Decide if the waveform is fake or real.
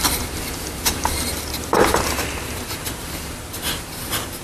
fake